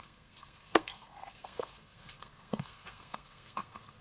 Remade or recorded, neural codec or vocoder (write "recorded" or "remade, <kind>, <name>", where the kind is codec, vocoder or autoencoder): remade, codec, SNAC